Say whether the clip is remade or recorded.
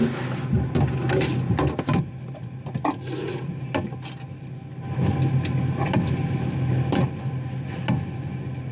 recorded